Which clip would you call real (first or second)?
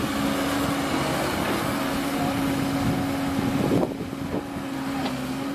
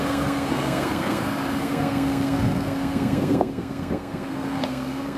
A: first